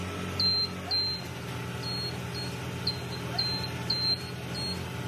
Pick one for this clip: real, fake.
real